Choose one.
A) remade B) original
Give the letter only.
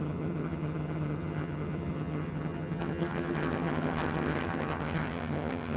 A